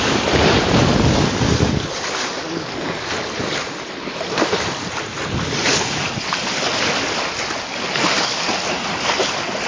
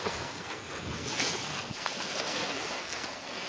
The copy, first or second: second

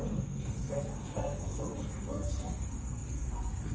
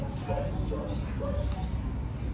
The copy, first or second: first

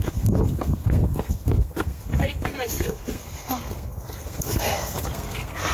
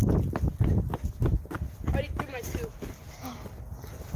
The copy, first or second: first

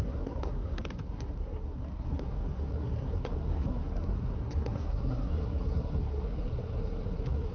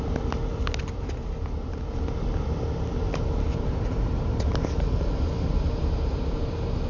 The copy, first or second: first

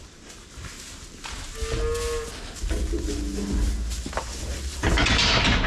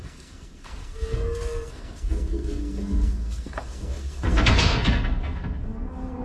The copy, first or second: second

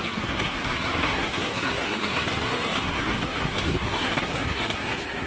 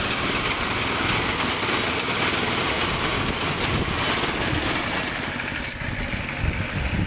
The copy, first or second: first